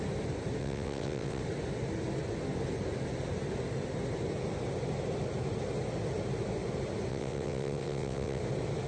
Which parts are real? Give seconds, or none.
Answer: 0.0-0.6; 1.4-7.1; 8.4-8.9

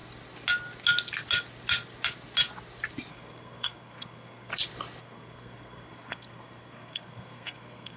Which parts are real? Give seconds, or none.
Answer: 0.0-3.1; 4.5-5.0

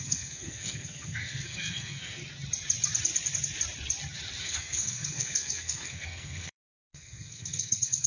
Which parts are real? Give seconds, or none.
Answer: 2.2-4.4

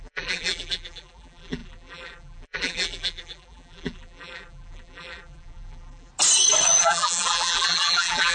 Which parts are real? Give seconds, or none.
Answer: 6.1-6.8

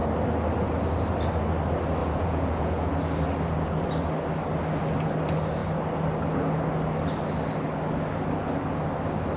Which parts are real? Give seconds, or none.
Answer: 0.0-2.0; 2.9-9.4

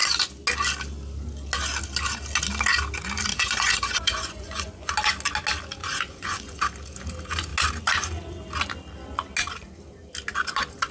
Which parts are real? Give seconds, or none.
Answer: 0.0-3.3; 4.9-5.8; 6.6-10.9